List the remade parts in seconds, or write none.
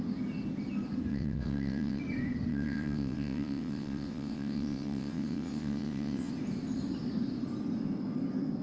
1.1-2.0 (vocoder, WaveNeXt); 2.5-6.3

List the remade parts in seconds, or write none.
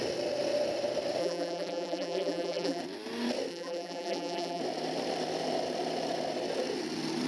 1.2-2.8 (vocoder, BigVGAN v2); 3.5-4.6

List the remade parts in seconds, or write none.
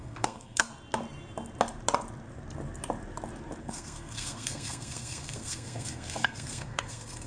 0.0-0.7 (codec, SNAC); 3.6-7.3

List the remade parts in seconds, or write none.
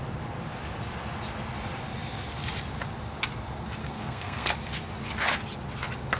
3.8-4.5 (codec, SNAC)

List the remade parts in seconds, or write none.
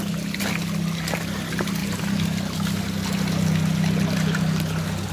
none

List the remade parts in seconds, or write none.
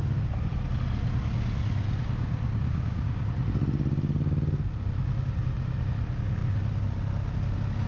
2.0-3.3 (codec, DAC)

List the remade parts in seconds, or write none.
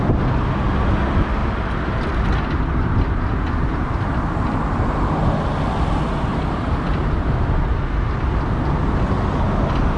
1.4-4.2 (vocoder, BigVGAN v2)